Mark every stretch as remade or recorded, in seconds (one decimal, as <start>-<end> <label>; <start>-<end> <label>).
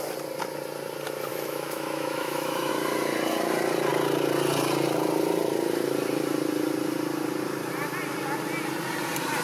0.0-1.3 recorded; 1.3-2.7 remade; 2.7-9.4 recorded